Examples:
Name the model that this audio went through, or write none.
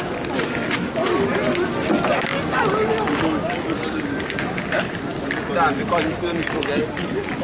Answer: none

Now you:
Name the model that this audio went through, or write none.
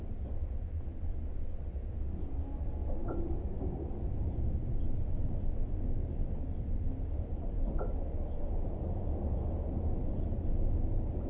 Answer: none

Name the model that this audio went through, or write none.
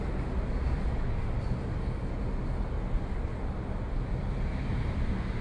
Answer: none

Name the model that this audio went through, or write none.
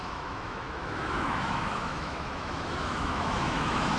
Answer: autoencoder, DAC-VAE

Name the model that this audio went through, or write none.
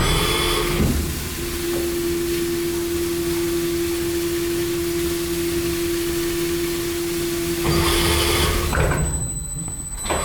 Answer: none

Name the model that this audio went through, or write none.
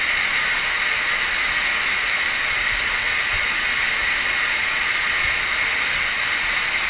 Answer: none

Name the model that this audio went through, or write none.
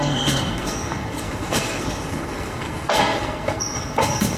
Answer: codec, SNAC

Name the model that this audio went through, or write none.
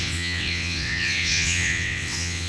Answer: vocoder, WaveNeXt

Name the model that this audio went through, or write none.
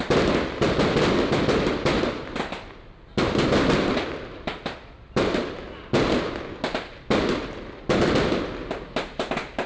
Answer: none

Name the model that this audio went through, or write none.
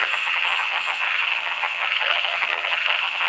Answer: vocoder, HiFi-GAN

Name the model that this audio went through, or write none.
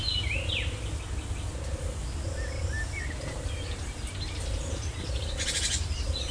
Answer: none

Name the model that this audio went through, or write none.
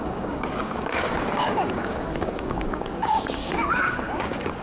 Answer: codec, DAC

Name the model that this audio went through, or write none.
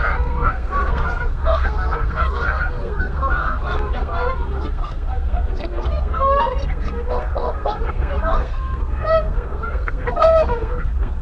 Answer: codec, SNAC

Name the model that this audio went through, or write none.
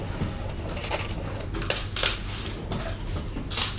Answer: none